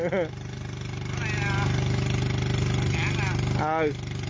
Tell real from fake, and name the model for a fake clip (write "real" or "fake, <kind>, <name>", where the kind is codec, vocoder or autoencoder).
real